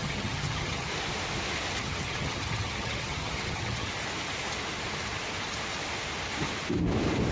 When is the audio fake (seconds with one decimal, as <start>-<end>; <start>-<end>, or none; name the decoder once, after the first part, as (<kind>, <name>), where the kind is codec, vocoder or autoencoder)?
0.0-0.9 (vocoder, HiFi-GAN); 1.8-3.9